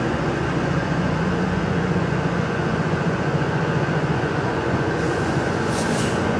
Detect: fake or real fake